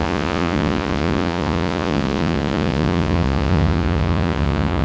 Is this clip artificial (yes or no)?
yes